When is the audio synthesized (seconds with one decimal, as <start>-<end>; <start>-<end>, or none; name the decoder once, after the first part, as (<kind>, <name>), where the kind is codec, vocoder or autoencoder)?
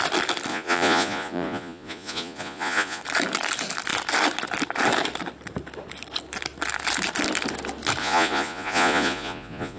0.5-3.0 (vocoder, Vocos); 8.0-9.8